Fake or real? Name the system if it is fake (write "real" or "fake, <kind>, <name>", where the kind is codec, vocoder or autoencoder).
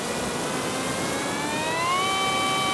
real